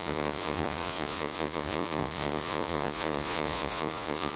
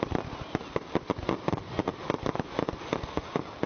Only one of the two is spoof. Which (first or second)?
first